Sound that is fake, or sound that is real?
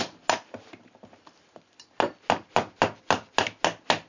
real